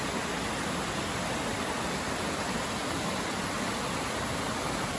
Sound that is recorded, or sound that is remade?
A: recorded